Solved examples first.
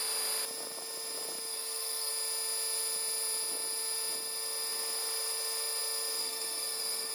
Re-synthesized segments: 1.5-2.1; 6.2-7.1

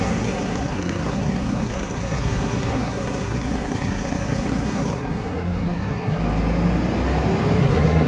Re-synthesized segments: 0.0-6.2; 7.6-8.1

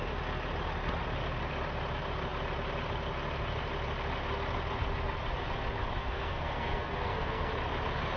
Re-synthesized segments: 6.0-7.5